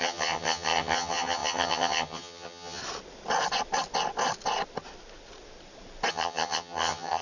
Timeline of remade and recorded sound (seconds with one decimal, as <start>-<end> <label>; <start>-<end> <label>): 0.0-2.8 remade; 2.8-6.1 recorded; 6.1-7.2 remade